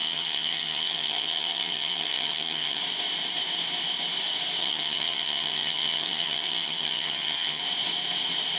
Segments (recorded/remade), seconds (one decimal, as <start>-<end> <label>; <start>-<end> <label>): 0.0-2.8 remade; 2.8-4.6 recorded; 4.6-7.6 remade; 7.6-8.6 recorded